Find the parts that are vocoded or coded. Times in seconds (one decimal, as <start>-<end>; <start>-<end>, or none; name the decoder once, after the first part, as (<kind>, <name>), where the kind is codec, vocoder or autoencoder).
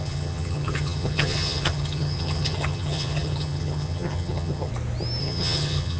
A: 0.0-4.7 (vocoder, HiFi-GAN); 5.2-6.0